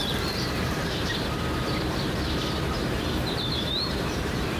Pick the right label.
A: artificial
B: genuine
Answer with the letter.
A